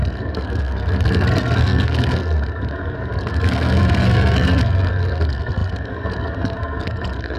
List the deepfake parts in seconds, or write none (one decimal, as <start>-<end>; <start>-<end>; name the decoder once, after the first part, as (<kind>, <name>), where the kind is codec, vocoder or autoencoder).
0.0-7.4 (codec, SNAC)

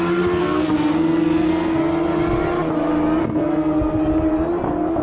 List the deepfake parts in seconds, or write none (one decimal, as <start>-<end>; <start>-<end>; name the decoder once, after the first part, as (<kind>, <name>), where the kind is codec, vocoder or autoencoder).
0.4-1.8 (codec, SNAC); 3.2-4.0

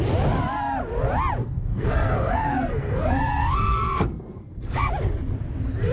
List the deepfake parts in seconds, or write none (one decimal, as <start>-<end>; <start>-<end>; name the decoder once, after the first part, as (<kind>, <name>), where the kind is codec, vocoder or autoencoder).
1.4-4.9 (codec, SNAC)

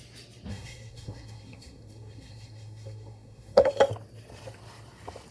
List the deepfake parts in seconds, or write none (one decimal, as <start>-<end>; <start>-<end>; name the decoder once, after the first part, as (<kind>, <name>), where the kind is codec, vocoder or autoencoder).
0.5-3.7 (codec, SNAC)

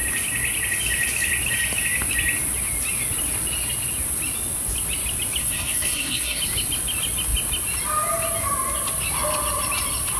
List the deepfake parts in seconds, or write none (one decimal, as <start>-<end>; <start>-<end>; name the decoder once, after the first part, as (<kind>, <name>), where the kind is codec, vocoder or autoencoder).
5.4-6.4 (codec, SNAC)

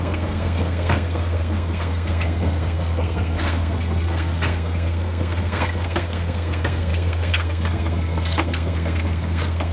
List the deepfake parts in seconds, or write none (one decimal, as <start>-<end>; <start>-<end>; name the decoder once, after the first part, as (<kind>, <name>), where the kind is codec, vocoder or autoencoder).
0.0-9.7 (codec, SNAC)

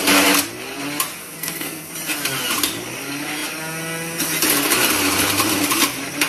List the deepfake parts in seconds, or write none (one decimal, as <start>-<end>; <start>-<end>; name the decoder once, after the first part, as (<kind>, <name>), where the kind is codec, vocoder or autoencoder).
1.2-1.9 (codec, SNAC)